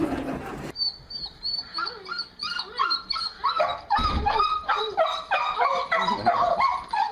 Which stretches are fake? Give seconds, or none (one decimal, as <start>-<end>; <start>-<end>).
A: none